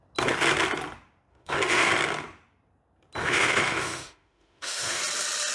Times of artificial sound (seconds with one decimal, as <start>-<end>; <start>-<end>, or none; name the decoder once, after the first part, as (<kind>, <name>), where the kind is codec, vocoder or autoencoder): 1.3-1.9 (autoencoder, DAC-VAE); 3.2-5.0

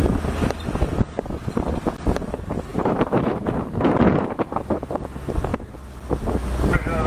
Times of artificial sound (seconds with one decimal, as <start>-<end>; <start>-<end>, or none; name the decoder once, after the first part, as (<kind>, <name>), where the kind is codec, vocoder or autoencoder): 2.7-4.9 (autoencoder, DAC-VAE)

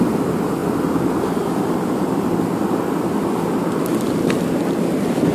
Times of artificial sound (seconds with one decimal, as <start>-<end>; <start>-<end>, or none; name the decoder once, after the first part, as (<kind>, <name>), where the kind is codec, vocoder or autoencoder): none

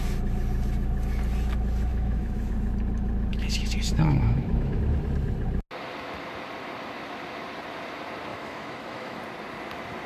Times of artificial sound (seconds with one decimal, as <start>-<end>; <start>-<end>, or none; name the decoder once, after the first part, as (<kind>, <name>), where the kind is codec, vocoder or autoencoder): 1.9-2.5 (autoencoder, DAC-VAE); 3.3-4.8; 8.3-9.2

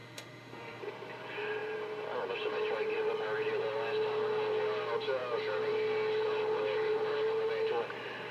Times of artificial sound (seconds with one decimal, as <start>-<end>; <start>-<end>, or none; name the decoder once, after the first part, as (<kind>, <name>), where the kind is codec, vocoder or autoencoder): 0.0-0.8 (autoencoder, DAC-VAE)

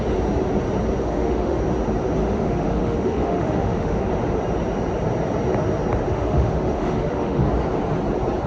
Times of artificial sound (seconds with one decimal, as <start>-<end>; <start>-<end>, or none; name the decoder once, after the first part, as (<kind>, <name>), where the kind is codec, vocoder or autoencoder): 1.0-1.6 (autoencoder, DAC-VAE); 2.2-4.1; 6.1-7.5